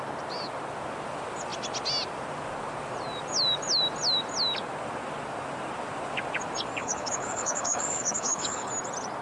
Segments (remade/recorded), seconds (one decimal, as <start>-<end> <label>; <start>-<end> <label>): 0.0-6.8 recorded; 6.8-8.7 remade; 8.7-9.2 recorded